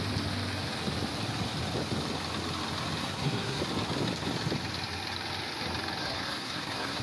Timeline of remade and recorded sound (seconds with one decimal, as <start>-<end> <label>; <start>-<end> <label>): 0.0-3.0 recorded; 3.0-3.6 remade; 3.6-6.0 recorded; 6.0-7.0 remade